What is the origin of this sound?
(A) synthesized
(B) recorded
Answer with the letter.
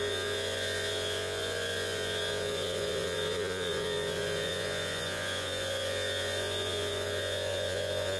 A